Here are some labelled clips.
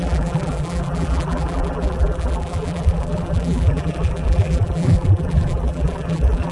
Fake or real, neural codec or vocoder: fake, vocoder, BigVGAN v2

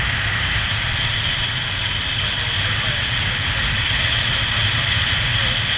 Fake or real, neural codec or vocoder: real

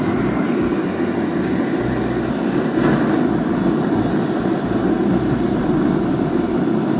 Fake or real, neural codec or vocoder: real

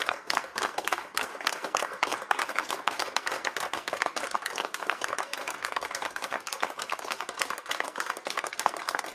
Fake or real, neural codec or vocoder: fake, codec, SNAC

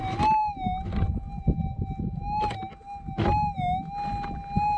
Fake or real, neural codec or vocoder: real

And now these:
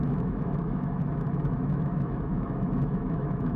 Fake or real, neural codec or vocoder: fake, autoencoder, DAC-VAE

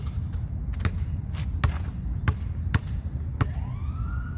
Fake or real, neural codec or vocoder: real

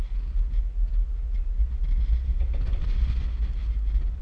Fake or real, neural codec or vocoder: real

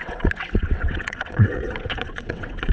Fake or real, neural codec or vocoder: fake, vocoder, WaveNeXt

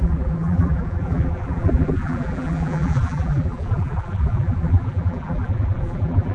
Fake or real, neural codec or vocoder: fake, vocoder, BigVGAN v2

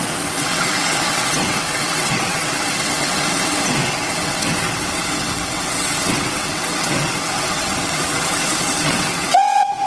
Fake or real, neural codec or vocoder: fake, vocoder, WaveNeXt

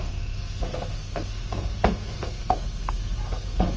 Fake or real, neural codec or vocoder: fake, codec, SNAC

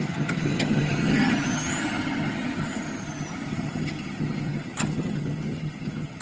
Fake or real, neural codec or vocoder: fake, vocoder, HiFi-GAN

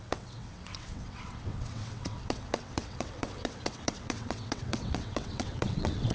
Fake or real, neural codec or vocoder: fake, vocoder, WaveNeXt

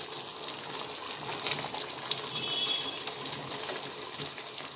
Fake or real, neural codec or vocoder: real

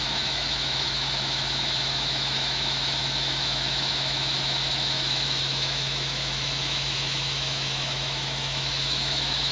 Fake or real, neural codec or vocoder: fake, autoencoder, DAC-VAE